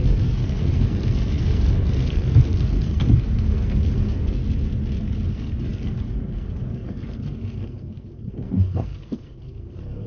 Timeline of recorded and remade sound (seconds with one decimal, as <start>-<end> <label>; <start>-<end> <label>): 0.0-4.4 remade; 4.4-5.3 recorded; 5.3-10.1 remade